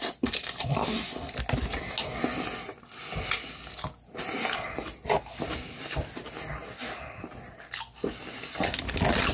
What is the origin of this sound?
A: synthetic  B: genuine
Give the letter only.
B